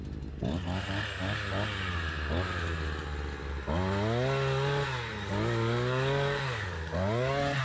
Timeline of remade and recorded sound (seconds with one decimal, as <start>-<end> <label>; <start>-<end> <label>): 0.0-5.1 recorded; 5.1-7.6 remade